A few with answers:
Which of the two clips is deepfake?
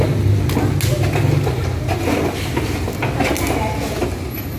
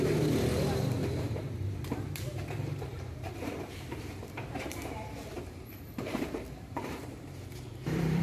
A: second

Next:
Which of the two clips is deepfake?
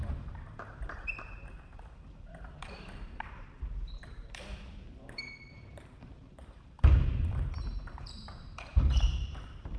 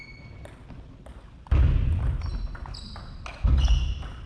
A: first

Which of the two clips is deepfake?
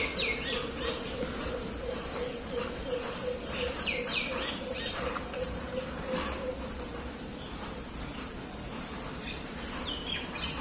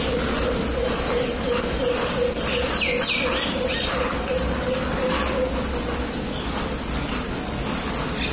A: first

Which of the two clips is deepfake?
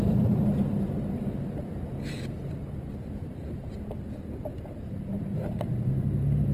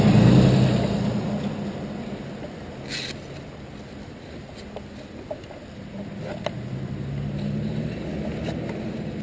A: first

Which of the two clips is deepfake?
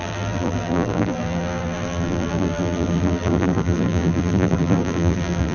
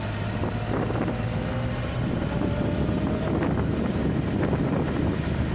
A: first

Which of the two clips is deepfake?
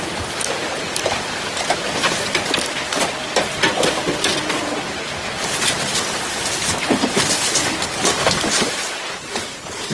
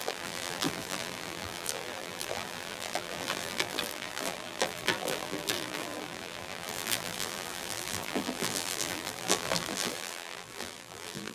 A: second